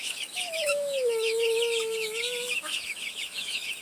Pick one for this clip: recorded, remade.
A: remade